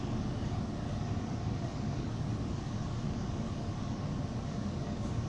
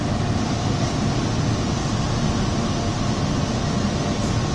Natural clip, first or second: second